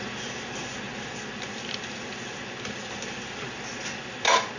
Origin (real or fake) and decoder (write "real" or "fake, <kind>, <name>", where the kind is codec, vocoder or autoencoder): real